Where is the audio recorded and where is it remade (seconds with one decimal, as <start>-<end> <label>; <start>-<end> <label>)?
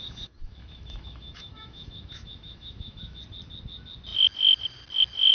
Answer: 0.0-3.2 remade; 3.2-5.3 recorded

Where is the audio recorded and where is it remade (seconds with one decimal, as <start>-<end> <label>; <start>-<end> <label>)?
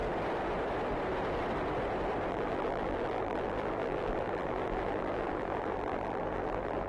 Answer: 0.0-2.3 recorded; 2.3-6.9 remade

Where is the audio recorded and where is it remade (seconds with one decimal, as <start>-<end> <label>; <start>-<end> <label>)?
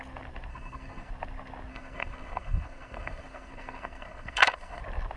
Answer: 0.0-0.5 recorded; 0.5-1.1 remade; 1.1-1.7 recorded; 1.7-4.8 remade; 4.8-5.2 recorded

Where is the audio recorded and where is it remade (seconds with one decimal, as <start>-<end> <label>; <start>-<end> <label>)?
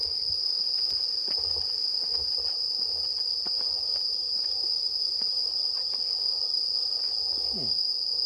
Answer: 0.0-8.3 recorded